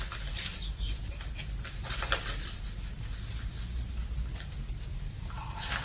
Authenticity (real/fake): real